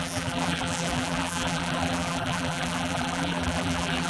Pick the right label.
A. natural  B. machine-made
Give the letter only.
B